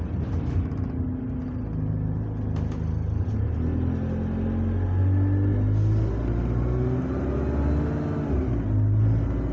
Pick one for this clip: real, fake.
real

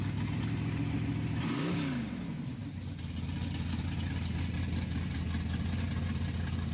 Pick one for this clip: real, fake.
real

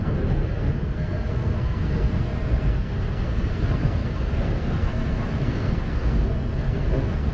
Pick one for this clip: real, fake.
fake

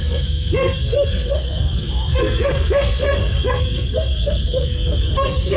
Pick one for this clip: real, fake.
fake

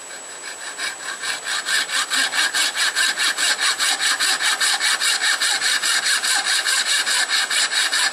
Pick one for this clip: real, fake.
real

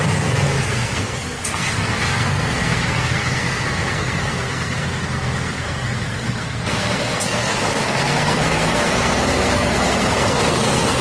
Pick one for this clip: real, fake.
fake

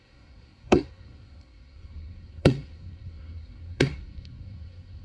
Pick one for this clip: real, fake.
fake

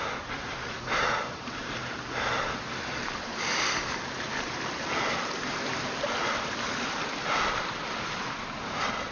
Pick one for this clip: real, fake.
real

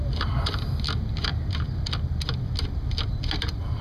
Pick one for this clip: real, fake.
real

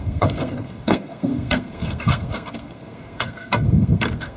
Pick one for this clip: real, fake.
fake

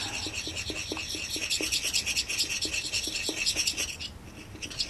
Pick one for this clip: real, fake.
real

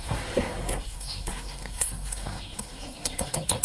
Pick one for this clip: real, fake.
fake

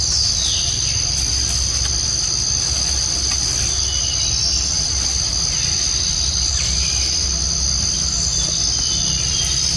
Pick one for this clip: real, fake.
real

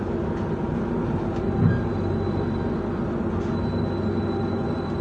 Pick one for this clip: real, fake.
real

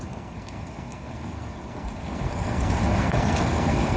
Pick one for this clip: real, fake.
fake